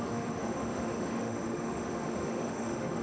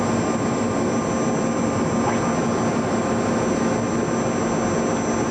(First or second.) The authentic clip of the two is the second